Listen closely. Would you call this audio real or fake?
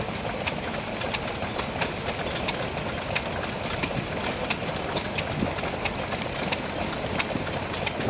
real